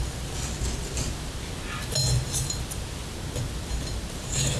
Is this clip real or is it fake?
real